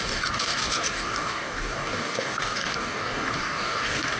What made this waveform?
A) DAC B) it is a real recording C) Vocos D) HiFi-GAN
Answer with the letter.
A